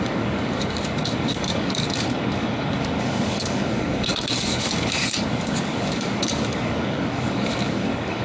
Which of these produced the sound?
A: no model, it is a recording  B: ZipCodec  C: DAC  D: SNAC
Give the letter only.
C